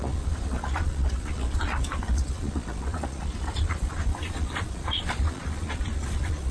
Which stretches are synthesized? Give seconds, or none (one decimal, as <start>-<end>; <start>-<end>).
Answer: 0.0-6.5

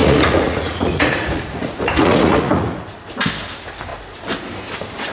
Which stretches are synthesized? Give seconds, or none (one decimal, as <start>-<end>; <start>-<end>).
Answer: 0.0-2.8

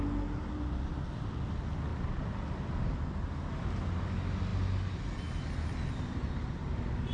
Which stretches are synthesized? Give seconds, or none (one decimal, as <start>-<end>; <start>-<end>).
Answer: none

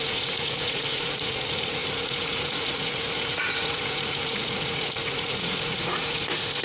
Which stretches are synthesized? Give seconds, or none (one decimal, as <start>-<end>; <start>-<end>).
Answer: 0.0-6.6

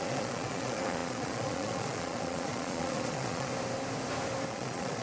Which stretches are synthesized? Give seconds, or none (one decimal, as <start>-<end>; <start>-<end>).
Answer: 0.0-3.5; 4.5-5.0

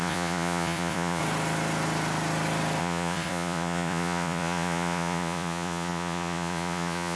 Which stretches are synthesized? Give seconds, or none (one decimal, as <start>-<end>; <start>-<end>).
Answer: 0.0-1.2; 2.8-7.2